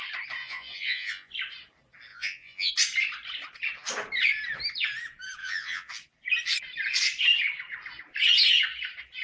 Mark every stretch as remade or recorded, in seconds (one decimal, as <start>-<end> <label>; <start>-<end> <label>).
0.0-0.4 recorded; 0.4-1.3 remade; 1.3-2.1 recorded; 2.1-2.7 remade; 2.7-5.4 recorded; 5.4-5.9 remade; 5.9-9.2 recorded